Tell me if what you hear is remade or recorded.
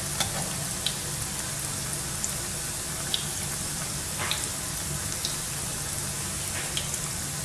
recorded